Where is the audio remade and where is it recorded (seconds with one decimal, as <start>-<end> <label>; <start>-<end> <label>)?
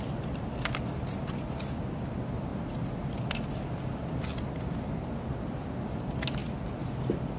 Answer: 0.0-7.4 recorded